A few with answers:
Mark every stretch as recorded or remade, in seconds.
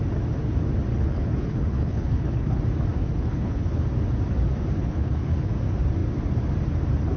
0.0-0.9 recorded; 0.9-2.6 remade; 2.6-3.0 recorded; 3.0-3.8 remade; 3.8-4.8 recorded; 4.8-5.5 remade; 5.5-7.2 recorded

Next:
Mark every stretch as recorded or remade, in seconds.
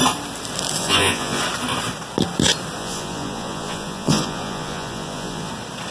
0.0-0.8 recorded; 0.8-1.4 remade; 1.4-2.8 recorded; 2.8-5.5 remade; 5.5-5.9 recorded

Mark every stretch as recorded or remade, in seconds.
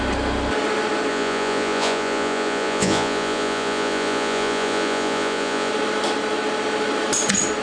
0.0-1.1 recorded; 1.1-5.7 remade; 5.7-7.6 recorded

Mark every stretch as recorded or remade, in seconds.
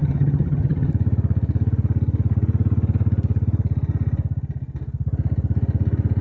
0.0-0.9 remade; 0.9-6.2 recorded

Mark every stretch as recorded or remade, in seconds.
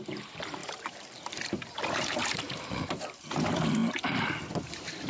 0.0-0.6 recorded; 0.6-3.4 remade; 3.4-5.1 recorded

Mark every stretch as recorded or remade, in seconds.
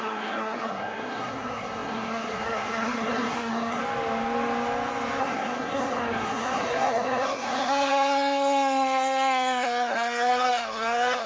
0.0-3.8 remade; 3.8-5.2 recorded; 5.2-11.3 remade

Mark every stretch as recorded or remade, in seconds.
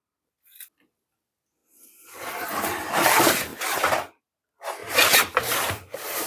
0.0-6.3 recorded